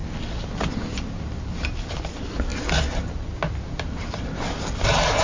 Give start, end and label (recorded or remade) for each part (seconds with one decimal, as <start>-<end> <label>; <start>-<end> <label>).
0.0-5.2 recorded